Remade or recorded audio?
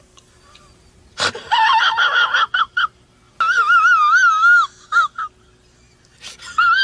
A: recorded